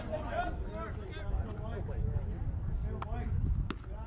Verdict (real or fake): real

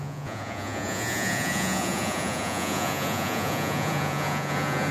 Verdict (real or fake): fake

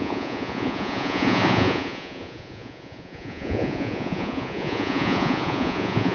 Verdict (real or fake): fake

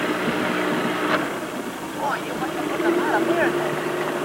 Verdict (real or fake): real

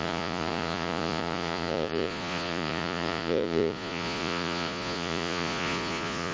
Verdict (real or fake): fake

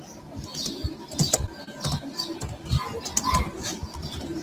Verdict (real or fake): real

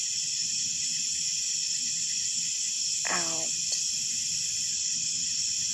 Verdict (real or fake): real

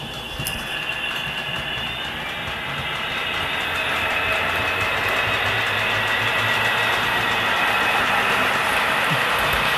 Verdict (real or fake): real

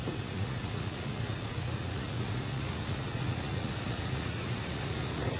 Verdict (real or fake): fake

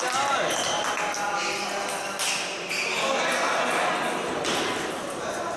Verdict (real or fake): real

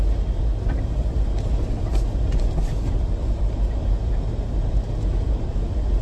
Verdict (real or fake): real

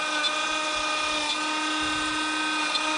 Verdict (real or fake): real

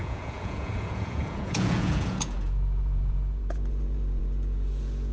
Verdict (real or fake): fake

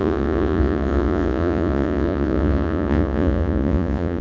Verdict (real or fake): fake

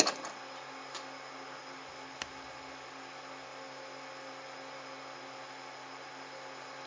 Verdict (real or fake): real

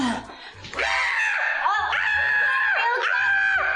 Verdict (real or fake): real